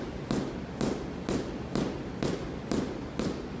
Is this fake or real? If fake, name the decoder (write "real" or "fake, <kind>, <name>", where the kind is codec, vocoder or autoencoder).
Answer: real